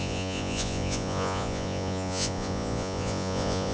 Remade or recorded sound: remade